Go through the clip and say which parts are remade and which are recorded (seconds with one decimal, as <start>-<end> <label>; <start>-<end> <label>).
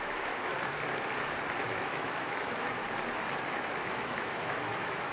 0.0-0.5 remade; 0.5-1.6 recorded; 1.6-2.8 remade; 2.8-3.5 recorded; 3.5-5.1 remade